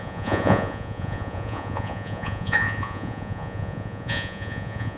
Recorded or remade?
remade